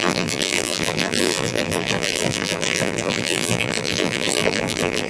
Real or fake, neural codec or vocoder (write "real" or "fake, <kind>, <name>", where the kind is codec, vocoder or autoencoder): fake, vocoder, BigVGAN v2